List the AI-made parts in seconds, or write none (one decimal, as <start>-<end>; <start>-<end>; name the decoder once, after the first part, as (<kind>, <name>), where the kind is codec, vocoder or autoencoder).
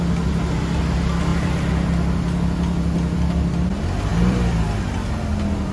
4.1-5.1 (vocoder, BigVGAN v2)